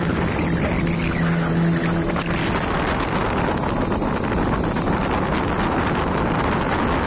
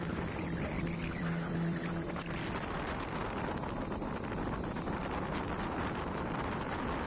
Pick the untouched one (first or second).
first